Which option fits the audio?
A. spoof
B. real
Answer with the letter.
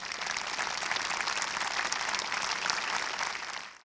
B